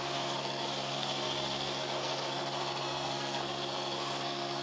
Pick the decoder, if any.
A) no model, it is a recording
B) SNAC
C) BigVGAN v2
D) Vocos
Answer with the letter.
B